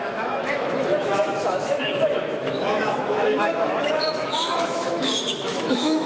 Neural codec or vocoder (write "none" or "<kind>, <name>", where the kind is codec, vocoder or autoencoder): autoencoder, DAC-VAE